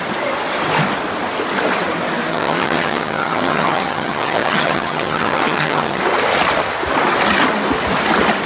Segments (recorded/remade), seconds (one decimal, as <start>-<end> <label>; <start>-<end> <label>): 0.0-2.3 recorded; 2.3-6.0 remade; 6.0-8.5 recorded